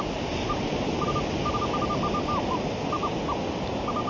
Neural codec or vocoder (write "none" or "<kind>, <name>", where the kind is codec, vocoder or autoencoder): none